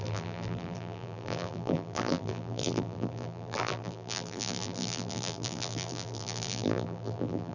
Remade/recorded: remade